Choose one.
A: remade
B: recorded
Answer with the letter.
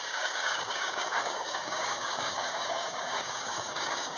A